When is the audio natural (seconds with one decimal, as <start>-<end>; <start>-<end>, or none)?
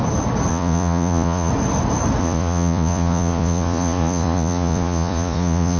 0.0-0.5; 1.5-2.2